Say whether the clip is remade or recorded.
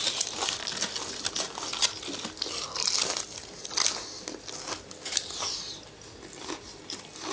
recorded